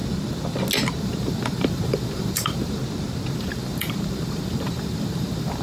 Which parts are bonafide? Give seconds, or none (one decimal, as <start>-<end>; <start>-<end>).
0.0-1.0; 2.8-3.3